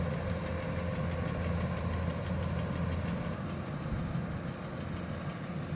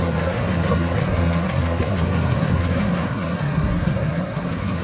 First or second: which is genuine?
first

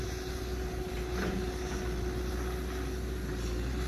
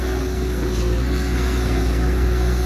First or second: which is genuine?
first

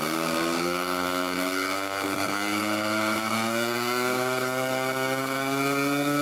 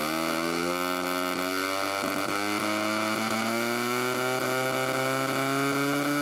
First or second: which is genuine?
second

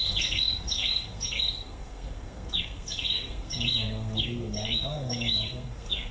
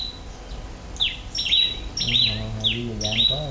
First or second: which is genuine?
second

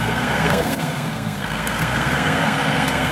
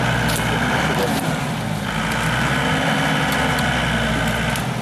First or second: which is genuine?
second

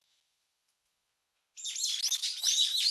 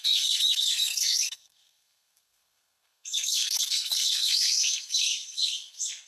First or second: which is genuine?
first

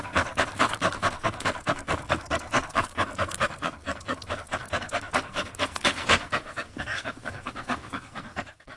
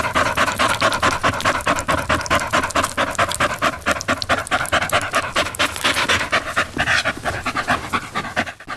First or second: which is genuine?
second